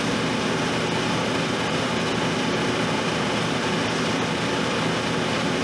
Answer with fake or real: real